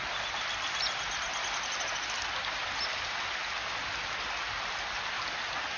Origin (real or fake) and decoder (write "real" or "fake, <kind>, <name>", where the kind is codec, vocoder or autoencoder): real